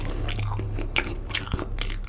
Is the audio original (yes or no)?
yes